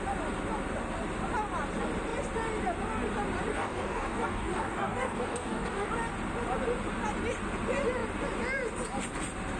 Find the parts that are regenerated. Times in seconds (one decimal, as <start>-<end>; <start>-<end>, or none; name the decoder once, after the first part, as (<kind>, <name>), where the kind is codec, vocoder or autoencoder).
3.5-5.9 (codec, DAC)